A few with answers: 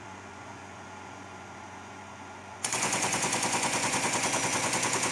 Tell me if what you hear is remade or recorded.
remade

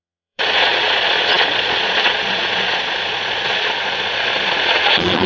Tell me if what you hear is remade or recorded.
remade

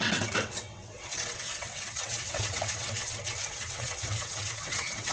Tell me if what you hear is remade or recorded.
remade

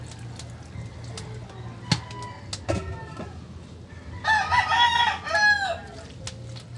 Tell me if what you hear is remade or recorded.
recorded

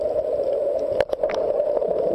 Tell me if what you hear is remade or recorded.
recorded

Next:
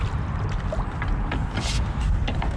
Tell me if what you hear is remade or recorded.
recorded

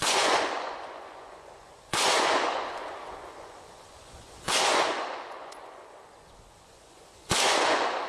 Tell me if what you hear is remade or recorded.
remade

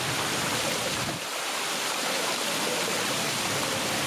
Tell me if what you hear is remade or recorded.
recorded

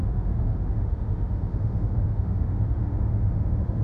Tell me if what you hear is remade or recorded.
remade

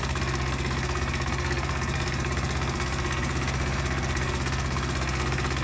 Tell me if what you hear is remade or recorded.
remade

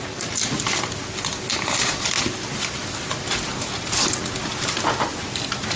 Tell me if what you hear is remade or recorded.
recorded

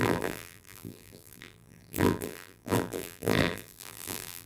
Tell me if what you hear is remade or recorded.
remade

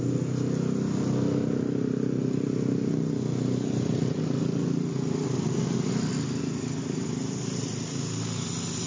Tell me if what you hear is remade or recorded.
recorded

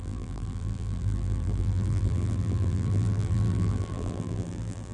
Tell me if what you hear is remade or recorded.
remade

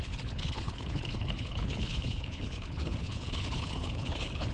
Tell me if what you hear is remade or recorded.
remade